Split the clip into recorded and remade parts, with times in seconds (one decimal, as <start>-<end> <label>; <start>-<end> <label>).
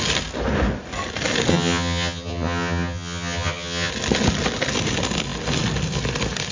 0.0-1.5 recorded; 1.5-3.9 remade; 3.9-6.5 recorded